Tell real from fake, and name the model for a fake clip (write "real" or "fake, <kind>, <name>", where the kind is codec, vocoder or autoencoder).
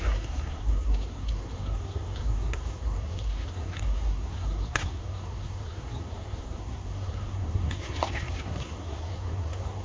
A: fake, codec, SNAC